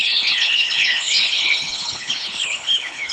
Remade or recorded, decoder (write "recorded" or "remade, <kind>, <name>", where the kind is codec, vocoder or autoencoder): remade, codec, HILCodec